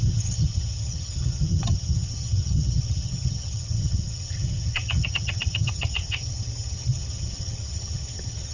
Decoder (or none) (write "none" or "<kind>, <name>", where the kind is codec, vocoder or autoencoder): vocoder, HiFi-GAN